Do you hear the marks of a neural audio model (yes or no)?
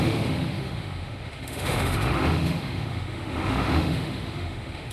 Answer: yes